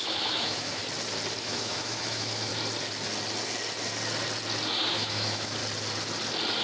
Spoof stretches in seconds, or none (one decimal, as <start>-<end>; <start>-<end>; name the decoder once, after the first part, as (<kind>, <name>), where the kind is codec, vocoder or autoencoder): 0.0-0.8 (autoencoder, DAC-VAE); 1.4-2.5; 4.9-5.6

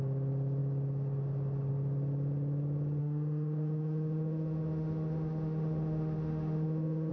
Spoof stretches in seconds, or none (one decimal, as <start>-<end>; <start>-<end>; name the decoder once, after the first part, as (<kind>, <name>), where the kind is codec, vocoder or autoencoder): 3.0-7.1 (autoencoder, DAC-VAE)

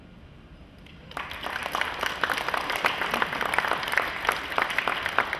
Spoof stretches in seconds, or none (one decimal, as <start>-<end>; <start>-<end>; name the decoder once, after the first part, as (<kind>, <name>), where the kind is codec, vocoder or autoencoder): none

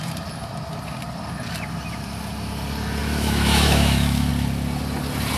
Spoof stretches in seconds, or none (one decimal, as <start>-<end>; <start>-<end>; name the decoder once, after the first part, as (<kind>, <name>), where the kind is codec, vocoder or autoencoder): 3.0-4.3 (autoencoder, DAC-VAE)